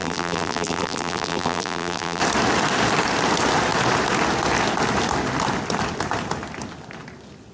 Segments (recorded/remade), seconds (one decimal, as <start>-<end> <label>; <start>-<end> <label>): 0.0-2.2 remade; 2.2-7.5 recorded